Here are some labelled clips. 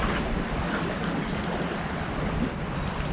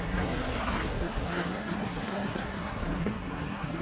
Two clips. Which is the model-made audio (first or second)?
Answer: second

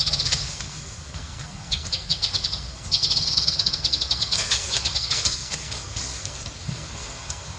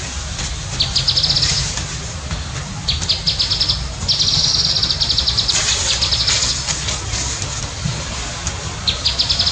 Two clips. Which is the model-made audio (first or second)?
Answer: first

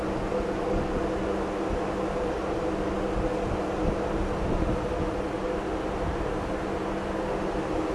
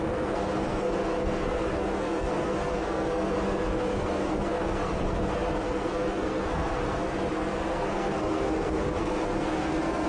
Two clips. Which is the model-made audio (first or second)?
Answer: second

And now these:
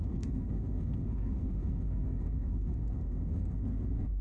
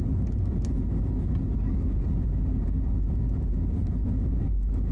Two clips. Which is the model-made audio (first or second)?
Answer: first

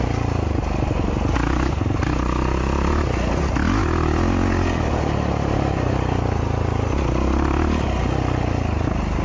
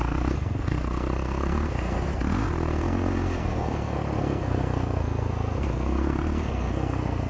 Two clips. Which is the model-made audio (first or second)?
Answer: second